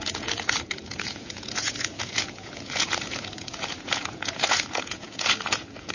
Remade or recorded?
remade